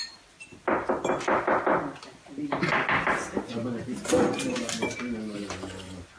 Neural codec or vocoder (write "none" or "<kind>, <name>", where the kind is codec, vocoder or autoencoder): none